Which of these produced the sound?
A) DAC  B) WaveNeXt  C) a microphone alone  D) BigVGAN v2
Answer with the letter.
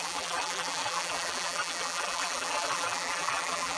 D